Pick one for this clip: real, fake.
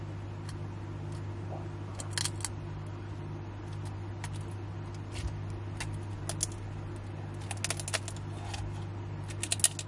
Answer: real